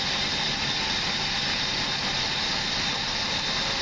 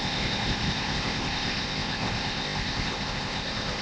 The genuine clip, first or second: first